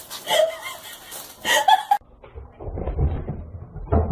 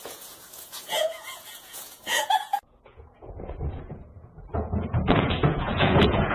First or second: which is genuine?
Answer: first